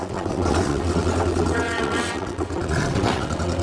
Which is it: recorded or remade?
remade